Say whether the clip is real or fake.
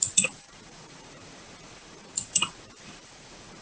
fake